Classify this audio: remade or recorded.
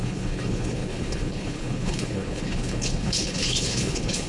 remade